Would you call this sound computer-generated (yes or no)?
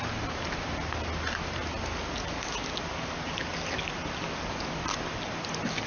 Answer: no